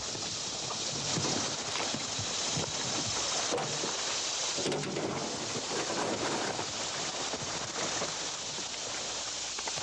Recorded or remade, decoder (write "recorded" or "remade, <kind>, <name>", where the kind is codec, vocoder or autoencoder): recorded